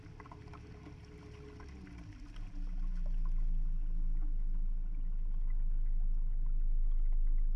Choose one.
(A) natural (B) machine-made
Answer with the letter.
A